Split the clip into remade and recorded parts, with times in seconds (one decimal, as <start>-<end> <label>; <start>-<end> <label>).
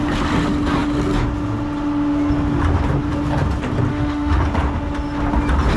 0.0-3.9 recorded; 3.9-4.4 remade; 4.4-5.8 recorded